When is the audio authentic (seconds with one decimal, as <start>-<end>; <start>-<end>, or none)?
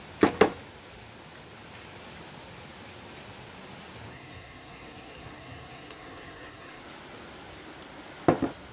0.0-4.1; 6.8-8.7